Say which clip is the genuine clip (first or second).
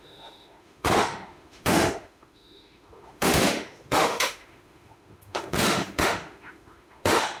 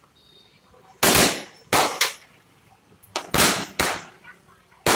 second